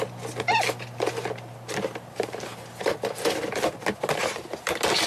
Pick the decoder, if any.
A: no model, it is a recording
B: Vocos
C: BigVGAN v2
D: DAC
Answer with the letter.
A